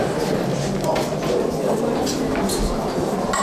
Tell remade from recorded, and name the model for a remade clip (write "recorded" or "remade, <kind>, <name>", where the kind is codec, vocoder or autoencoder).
recorded